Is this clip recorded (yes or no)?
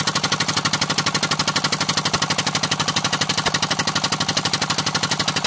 yes